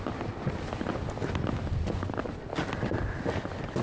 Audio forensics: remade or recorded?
recorded